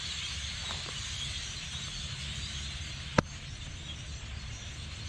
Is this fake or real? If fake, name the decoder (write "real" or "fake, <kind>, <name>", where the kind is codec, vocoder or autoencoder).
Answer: real